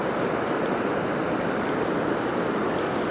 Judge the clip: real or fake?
real